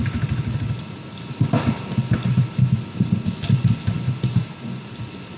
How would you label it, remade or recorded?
recorded